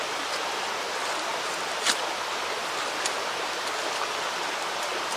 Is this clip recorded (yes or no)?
yes